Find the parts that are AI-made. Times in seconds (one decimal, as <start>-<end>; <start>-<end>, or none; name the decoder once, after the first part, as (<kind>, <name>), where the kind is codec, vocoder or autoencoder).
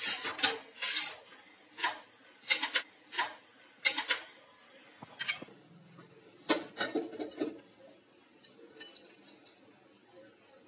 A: none